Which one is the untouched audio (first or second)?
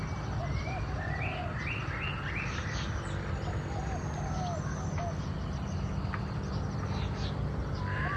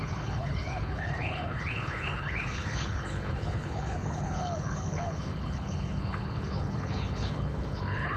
first